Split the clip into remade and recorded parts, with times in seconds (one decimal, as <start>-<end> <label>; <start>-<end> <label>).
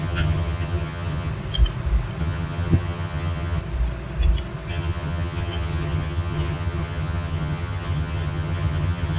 0.0-1.3 remade; 1.3-2.2 recorded; 2.2-3.6 remade; 3.6-4.7 recorded; 4.7-9.2 remade